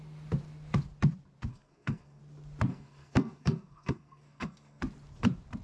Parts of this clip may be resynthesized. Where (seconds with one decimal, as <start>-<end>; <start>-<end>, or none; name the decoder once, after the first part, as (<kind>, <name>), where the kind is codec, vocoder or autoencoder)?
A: 1.5-2.2 (codec, SNAC); 2.7-4.8